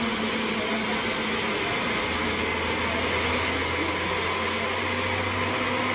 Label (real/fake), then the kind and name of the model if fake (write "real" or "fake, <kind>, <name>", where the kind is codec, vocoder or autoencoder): real